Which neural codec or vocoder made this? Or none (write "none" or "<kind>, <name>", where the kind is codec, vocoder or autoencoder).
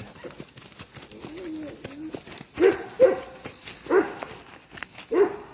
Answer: none